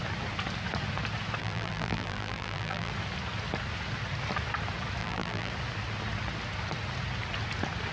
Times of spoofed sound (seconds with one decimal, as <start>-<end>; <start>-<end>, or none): 1.4-2.9; 5.0-5.5